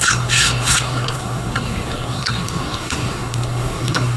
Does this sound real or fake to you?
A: fake